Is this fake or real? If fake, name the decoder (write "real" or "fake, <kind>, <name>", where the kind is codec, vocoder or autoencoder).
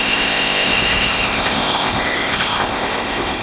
fake, codec, ZipCodec